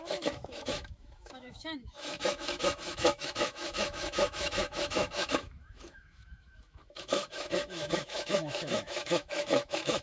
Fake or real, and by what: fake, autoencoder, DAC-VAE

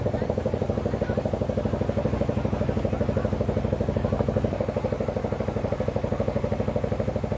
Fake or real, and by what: real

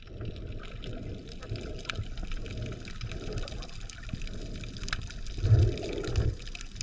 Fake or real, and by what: real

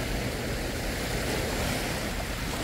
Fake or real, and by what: real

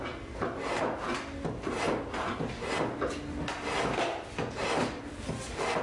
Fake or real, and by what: real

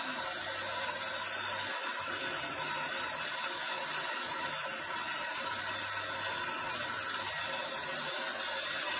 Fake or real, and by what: real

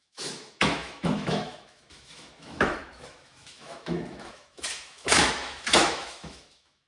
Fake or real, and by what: fake, autoencoder, DAC-VAE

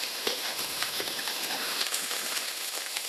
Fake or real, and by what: fake, autoencoder, DAC-VAE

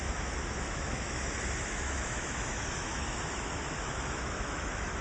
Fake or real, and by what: fake, autoencoder, DAC-VAE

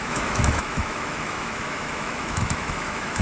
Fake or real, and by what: fake, autoencoder, DAC-VAE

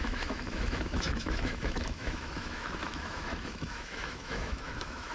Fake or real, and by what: fake, autoencoder, DAC-VAE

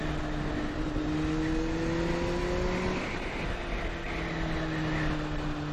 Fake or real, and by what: real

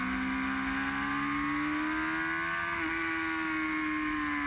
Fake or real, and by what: real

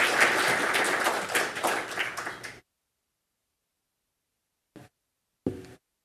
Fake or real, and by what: real